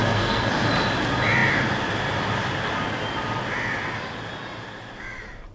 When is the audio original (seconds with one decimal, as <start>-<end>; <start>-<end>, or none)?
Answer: 0.5-5.5